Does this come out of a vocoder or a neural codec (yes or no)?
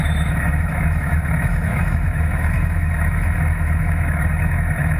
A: yes